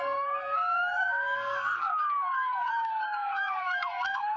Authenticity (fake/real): fake